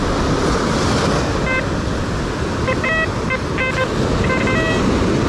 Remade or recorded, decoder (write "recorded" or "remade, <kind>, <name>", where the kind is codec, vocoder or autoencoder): recorded